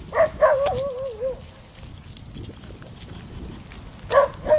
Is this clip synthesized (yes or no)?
no